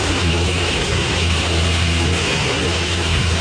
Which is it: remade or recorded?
remade